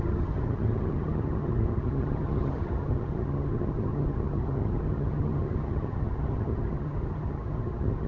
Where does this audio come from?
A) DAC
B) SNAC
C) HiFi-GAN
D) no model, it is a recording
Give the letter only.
C